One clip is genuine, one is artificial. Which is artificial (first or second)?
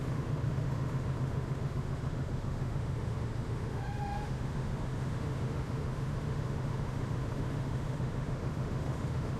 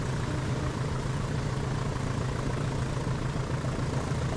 first